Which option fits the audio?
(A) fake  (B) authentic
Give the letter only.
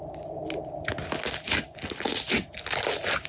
B